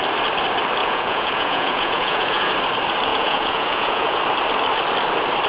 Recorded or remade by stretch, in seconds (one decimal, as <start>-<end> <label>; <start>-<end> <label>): 0.0-0.8 recorded; 0.8-2.5 remade; 2.5-3.1 recorded; 3.1-4.2 remade; 4.2-5.5 recorded